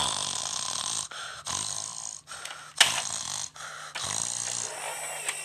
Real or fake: real